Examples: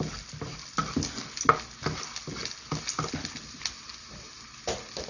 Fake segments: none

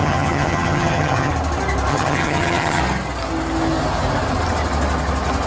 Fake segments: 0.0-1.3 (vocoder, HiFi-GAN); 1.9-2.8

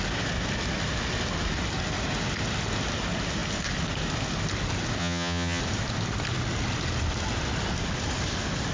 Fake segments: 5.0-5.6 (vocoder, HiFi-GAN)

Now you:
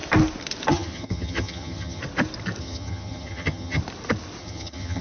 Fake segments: 0.7-2.0 (vocoder, HiFi-GAN); 2.6-3.8; 4.4-5.0